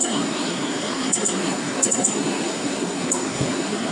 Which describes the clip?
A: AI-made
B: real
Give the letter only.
A